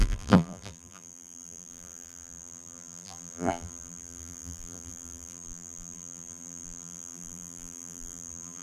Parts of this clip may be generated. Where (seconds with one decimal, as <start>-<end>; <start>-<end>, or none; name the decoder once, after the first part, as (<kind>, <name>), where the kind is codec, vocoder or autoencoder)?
0.0-8.6 (vocoder, BigVGAN v2)